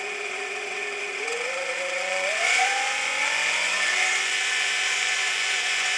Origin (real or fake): fake